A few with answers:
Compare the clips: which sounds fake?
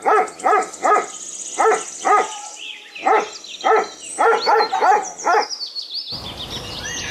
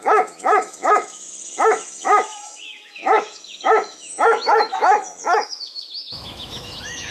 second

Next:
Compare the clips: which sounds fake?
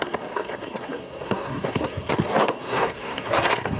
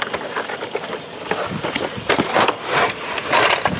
first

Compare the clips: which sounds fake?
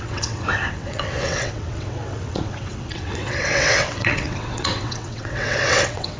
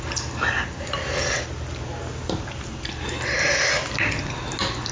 first